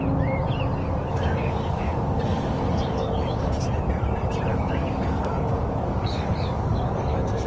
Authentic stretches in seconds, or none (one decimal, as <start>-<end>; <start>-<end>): 0.0-0.8; 3.6-4.5

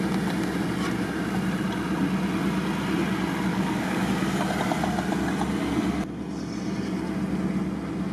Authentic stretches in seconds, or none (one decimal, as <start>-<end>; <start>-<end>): 0.0-3.5; 4.1-8.1

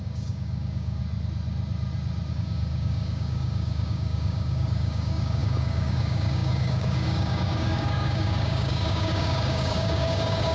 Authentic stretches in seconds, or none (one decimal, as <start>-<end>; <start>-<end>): 1.0-2.3

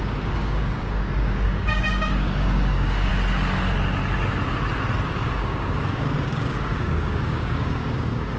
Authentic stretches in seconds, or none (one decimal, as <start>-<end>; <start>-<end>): 3.1-5.1

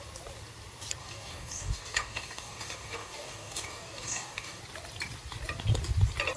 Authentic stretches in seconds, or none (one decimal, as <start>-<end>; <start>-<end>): 0.0-1.0; 4.6-6.4

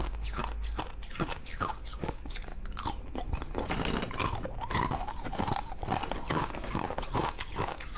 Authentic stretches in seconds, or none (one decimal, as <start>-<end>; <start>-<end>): 0.4-1.1; 2.5-6.3